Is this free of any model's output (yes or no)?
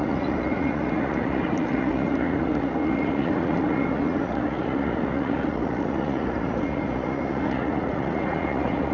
no